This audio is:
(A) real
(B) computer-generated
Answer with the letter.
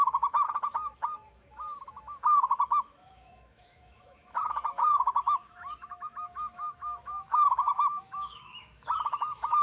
B